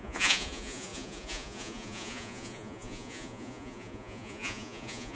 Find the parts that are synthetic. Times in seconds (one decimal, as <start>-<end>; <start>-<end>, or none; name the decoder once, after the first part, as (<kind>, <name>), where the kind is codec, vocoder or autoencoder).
0.0-5.2 (vocoder, Vocos)